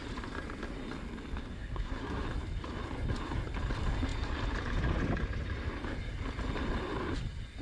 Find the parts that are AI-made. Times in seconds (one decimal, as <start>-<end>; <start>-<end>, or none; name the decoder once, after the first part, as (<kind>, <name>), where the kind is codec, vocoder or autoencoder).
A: 1.5-2.2 (codec, SNAC)